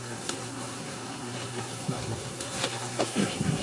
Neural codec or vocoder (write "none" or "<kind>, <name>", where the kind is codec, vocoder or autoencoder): codec, SNAC